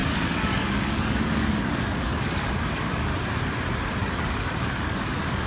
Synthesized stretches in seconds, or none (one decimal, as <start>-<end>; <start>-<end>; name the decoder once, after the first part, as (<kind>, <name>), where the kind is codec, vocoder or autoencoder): 0.0-3.1 (codec, DAC); 4.1-5.5